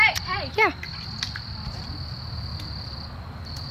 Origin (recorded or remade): recorded